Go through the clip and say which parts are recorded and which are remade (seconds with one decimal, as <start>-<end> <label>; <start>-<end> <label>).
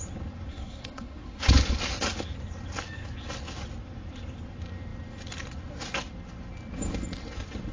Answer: 0.0-0.5 recorded; 0.5-1.5 remade; 1.5-7.7 recorded